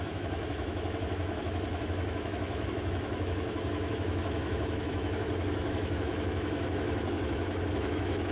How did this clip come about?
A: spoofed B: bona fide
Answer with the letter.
A